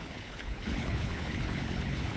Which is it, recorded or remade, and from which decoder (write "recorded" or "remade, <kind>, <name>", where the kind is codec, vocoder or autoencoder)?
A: remade, codec, HILCodec